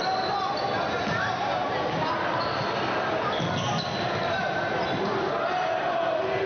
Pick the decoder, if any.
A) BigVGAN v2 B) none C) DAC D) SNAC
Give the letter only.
B